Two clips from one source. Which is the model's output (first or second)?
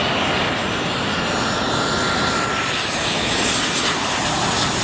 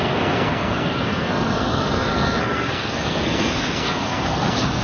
second